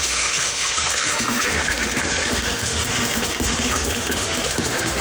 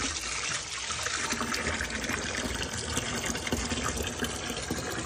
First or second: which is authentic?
second